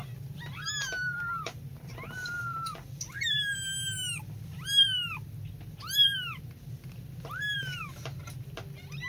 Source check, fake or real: real